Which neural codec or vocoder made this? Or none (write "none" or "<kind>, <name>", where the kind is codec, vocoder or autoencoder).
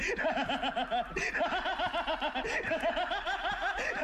none